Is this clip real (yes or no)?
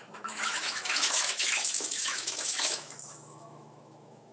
no